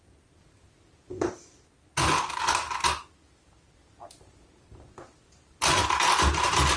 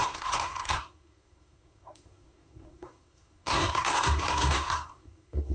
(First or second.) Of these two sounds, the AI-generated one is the second